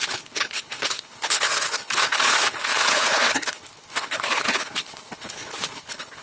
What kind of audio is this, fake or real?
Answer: fake